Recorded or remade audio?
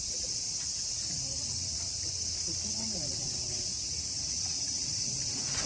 remade